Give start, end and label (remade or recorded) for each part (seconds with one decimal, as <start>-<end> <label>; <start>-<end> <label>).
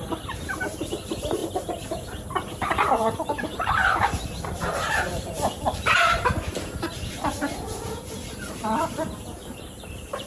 0.0-7.3 remade; 7.3-8.6 recorded; 8.6-10.3 remade